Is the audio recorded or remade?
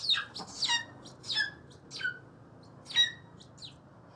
recorded